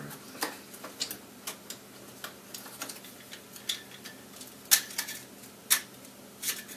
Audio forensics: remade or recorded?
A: recorded